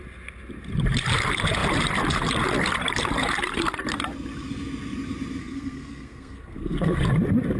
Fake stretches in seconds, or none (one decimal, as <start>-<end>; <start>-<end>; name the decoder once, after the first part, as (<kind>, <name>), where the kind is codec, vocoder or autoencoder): 5.4-7.0 (codec, SNAC)